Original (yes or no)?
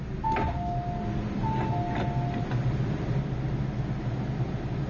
yes